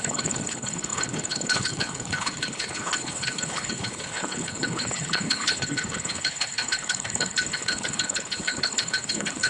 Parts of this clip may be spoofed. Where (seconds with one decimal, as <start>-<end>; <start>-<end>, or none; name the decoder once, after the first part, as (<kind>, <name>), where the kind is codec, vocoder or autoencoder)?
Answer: 0.0-9.5 (codec, HILCodec)